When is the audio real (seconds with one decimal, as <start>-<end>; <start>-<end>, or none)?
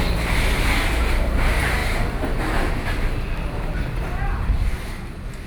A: 0.0-5.5